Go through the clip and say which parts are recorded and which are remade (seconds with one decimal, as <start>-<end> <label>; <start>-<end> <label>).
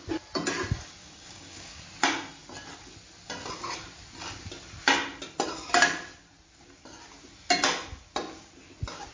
0.0-1.0 recorded; 1.0-1.8 remade; 1.8-9.1 recorded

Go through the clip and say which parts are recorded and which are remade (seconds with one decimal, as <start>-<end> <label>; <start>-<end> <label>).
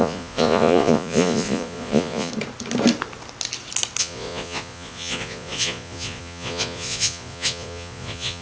0.0-2.3 remade; 2.3-4.0 recorded; 4.0-8.4 remade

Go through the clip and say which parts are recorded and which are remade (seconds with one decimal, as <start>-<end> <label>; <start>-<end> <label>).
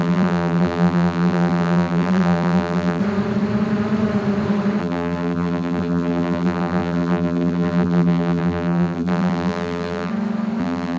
0.0-3.0 remade; 3.0-4.8 recorded; 4.8-10.1 remade; 10.1-10.6 recorded; 10.6-11.0 remade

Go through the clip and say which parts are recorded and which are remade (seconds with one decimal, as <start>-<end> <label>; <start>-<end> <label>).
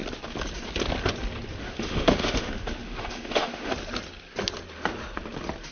0.0-1.6 recorded; 1.6-3.7 remade; 3.7-5.7 recorded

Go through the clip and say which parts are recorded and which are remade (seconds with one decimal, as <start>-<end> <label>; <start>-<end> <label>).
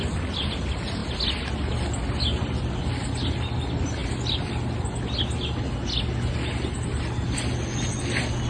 0.0-8.5 recorded